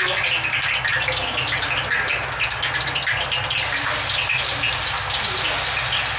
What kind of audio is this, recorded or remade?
recorded